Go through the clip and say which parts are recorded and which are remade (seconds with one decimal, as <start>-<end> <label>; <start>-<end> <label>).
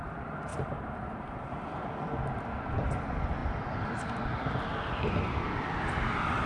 0.0-0.5 recorded; 0.5-1.6 remade; 1.6-6.5 recorded